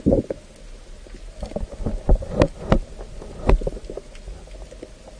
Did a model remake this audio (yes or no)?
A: no